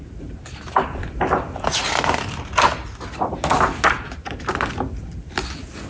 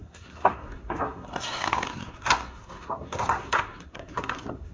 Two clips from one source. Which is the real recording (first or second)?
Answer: first